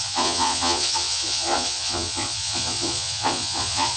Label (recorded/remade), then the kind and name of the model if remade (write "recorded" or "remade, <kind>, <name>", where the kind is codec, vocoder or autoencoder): remade, vocoder, Vocos